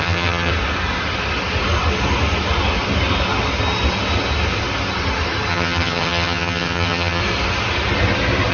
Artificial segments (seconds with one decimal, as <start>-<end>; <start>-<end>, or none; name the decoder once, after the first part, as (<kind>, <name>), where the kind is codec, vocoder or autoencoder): 0.0-0.5 (vocoder, HiFi-GAN); 5.5-7.2